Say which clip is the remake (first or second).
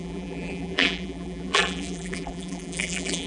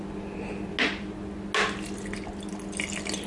first